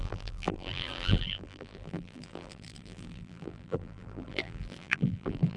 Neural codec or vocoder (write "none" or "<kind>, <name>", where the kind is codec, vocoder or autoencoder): vocoder, BigVGAN v2